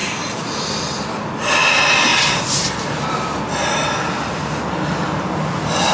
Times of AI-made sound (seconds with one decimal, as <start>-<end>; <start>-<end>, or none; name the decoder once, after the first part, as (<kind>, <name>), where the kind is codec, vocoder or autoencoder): 0.0-0.7 (vocoder, BigVGAN v2)